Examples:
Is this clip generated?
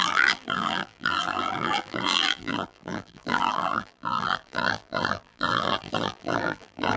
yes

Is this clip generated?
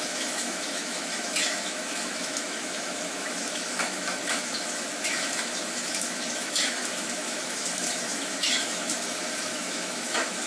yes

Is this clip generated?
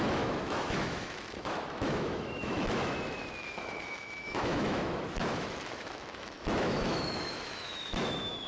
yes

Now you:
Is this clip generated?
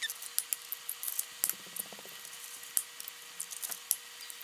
no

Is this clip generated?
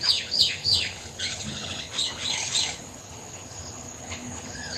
yes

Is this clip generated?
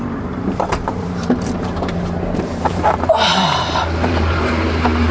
yes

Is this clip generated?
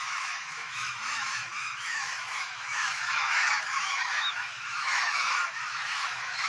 yes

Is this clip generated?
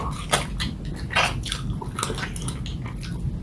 no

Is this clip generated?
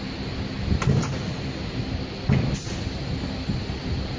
no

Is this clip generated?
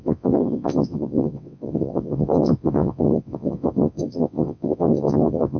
yes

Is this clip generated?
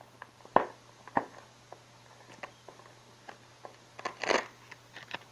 no